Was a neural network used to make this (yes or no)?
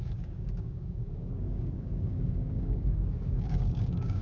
yes